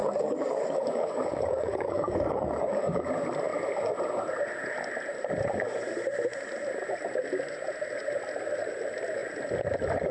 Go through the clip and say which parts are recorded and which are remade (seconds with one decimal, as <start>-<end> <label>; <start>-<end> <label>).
0.0-3.1 remade; 3.1-10.1 recorded